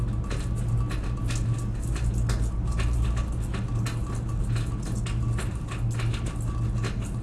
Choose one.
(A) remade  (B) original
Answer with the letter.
B